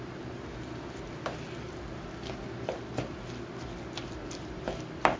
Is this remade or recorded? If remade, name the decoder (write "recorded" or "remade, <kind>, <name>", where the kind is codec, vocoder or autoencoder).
recorded